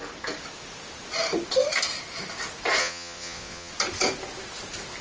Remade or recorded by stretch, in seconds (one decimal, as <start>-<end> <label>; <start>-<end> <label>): 0.0-2.8 recorded; 2.8-3.7 remade; 3.7-5.0 recorded